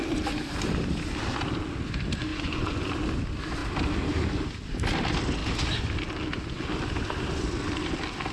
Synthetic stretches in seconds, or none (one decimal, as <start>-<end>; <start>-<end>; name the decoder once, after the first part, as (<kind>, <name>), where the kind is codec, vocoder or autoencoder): 2.3-2.9 (vocoder, Vocos)